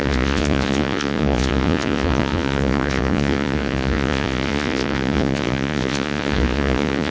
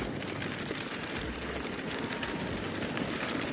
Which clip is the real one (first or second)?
second